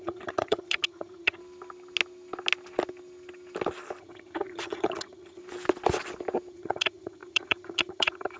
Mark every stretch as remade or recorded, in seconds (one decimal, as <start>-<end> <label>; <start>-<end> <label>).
0.0-1.4 remade; 1.4-4.0 recorded; 4.0-5.4 remade; 5.4-6.5 recorded; 6.5-8.4 remade